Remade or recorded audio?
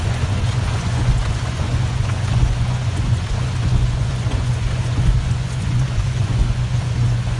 remade